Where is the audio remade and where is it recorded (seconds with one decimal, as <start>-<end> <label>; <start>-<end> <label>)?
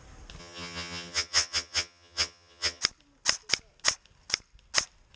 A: 0.0-0.4 recorded; 0.4-2.8 remade; 2.8-5.2 recorded